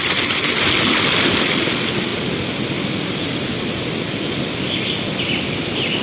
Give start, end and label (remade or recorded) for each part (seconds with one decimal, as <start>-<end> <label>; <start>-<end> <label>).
0.0-6.0 recorded